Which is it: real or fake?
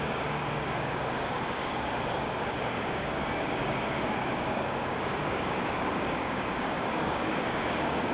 fake